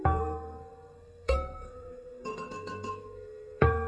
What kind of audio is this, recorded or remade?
remade